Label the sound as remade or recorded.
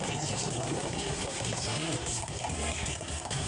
remade